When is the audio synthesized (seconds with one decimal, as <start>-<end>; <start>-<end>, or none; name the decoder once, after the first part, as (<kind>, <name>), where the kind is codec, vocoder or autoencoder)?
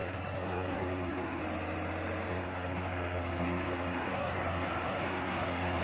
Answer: 0.0-1.4 (codec, SNAC); 2.3-5.8